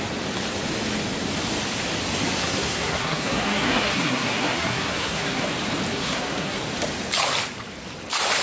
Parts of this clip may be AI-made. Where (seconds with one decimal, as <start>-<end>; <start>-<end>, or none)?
2.4-5.4; 5.9-6.6

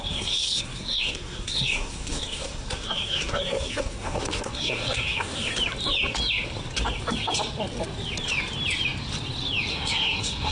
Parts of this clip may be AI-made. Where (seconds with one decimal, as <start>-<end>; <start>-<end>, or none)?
0.0-5.5; 9.7-10.5

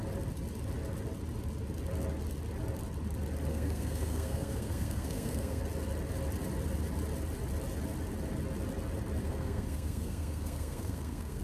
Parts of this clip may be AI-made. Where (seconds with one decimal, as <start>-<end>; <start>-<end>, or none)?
3.5-5.6; 9.2-11.4

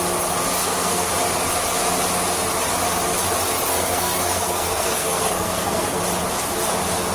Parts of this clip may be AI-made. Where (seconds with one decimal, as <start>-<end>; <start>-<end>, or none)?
0.6-1.1; 3.7-6.0